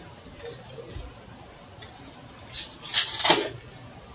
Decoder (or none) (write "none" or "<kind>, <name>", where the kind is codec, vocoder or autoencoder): none